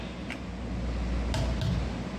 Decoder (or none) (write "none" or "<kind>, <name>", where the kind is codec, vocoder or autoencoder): none